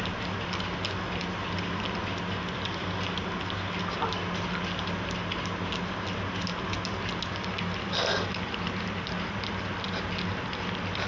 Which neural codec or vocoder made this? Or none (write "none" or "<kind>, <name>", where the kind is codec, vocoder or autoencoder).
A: none